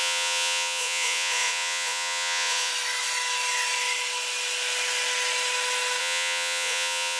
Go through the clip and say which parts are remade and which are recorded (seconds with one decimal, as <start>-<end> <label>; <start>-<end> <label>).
0.0-2.7 remade; 2.7-6.0 recorded; 6.0-7.2 remade